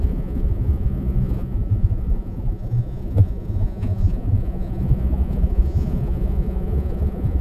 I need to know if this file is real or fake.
fake